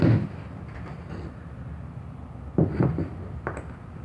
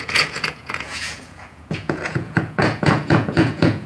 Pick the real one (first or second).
first